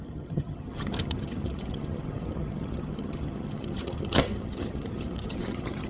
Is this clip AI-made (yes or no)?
yes